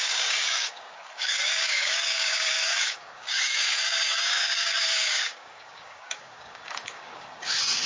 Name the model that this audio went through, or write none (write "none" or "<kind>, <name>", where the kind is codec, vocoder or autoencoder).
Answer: codec, DAC